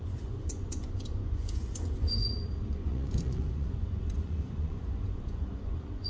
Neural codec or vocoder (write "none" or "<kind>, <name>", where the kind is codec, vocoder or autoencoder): vocoder, Vocos